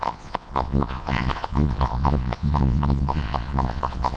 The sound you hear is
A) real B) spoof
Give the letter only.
B